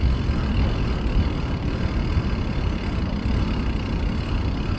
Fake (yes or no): yes